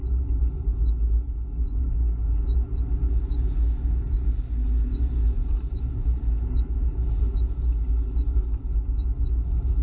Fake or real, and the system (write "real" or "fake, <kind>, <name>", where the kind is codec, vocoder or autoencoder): real